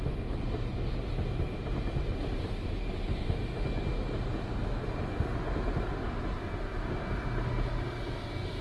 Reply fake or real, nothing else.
real